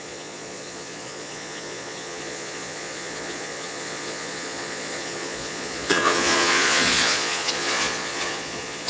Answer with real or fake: fake